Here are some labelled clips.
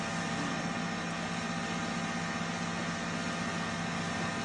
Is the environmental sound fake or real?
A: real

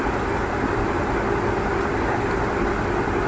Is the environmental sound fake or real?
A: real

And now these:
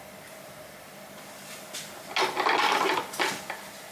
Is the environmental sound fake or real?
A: real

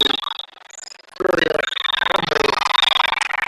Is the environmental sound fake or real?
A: real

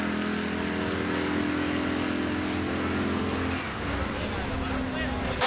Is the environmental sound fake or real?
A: real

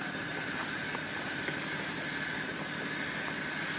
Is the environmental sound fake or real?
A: fake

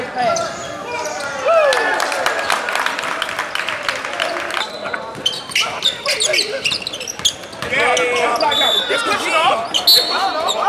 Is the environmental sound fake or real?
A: real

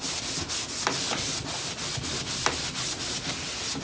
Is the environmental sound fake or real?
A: real